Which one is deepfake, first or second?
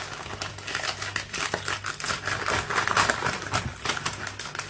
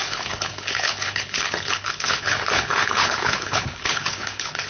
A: second